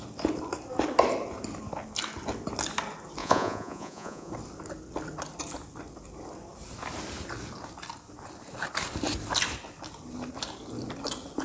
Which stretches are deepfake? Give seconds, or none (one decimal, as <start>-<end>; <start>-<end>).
3.2-4.3